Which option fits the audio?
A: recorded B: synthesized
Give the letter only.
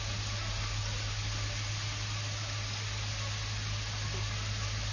A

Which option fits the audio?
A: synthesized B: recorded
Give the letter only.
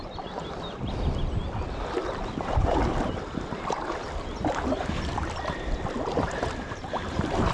B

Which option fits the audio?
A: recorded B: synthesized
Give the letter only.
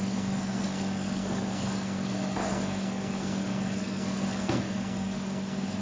B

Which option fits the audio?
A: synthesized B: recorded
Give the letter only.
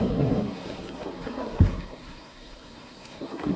A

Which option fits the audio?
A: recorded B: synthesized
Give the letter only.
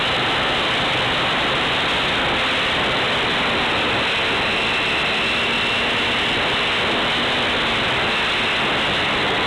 A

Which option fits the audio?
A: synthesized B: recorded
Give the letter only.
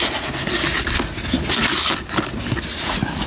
B